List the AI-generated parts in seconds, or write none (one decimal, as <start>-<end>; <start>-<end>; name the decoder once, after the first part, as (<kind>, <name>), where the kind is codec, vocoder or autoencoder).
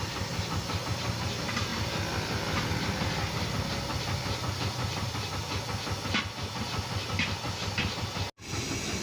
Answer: none